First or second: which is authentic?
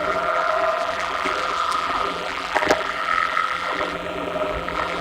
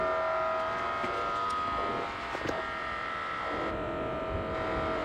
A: second